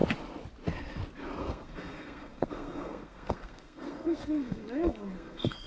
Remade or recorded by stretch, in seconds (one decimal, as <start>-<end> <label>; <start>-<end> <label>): 0.0-1.4 recorded; 1.4-5.7 remade